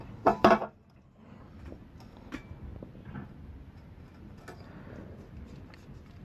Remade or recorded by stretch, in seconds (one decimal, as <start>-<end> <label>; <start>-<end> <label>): 0.0-6.2 recorded